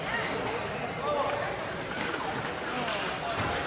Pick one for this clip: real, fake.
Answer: real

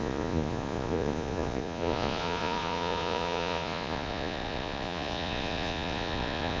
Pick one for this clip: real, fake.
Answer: fake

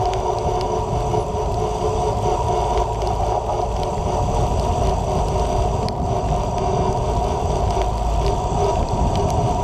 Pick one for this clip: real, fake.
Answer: real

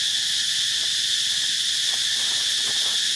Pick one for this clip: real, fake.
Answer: real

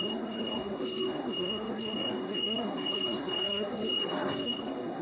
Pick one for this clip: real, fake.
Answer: fake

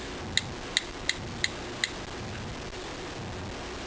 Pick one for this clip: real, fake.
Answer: real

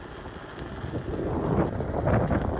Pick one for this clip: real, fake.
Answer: real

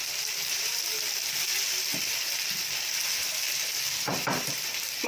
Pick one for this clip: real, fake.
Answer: fake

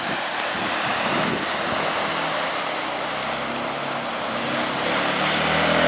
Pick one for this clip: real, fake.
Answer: real